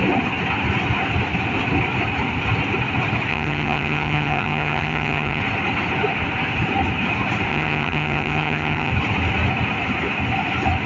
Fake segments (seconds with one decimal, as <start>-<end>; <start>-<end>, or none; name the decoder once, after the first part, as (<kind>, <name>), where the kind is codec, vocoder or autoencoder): 3.3-5.4 (vocoder, HiFi-GAN); 7.5-8.9